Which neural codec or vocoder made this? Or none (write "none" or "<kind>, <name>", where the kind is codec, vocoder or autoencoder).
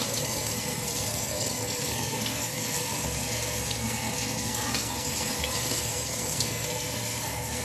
codec, SNAC